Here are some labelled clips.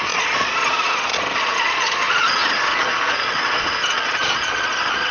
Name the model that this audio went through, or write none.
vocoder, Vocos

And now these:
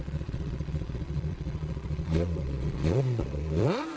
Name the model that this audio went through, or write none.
vocoder, Vocos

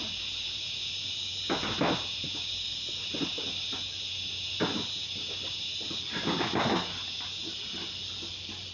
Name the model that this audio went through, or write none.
none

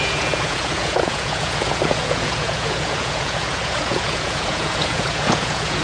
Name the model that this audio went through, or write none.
vocoder, Vocos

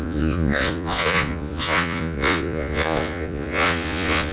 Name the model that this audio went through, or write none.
vocoder, Vocos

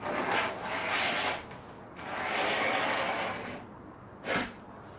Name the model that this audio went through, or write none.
none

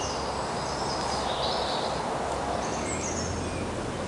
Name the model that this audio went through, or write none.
none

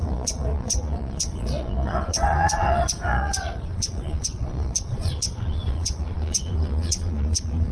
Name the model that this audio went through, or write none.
vocoder, Vocos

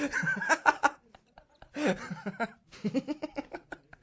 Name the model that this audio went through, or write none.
none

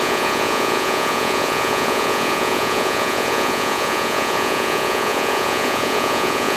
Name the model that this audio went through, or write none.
vocoder, Vocos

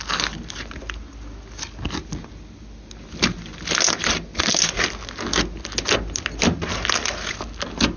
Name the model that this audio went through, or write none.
none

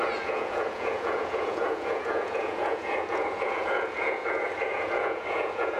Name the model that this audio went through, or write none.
vocoder, Vocos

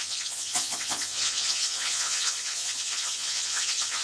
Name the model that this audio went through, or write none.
vocoder, Vocos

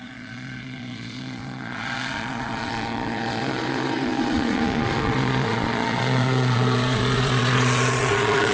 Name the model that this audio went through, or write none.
vocoder, Vocos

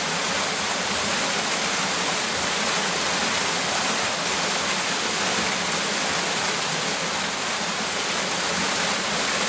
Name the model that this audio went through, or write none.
none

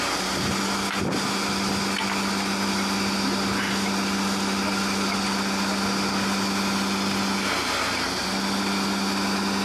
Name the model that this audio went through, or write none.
none